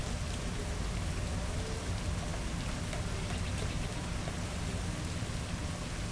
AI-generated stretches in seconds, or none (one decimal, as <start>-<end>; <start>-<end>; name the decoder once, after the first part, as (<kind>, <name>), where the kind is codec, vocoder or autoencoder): none